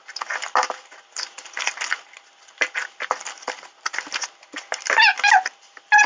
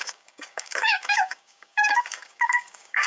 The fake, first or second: second